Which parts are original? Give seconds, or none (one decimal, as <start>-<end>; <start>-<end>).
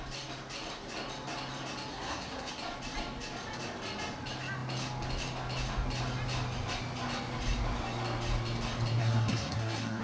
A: 0.0-1.9; 2.5-9.0